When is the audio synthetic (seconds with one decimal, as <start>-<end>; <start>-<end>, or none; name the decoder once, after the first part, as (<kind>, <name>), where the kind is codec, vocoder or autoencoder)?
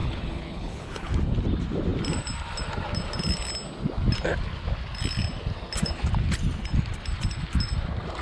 0.0-1.1 (codec, HILCodec)